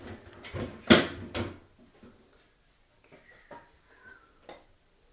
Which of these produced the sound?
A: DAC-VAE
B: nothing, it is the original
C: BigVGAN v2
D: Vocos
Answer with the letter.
B